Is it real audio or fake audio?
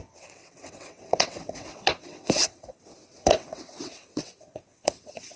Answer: fake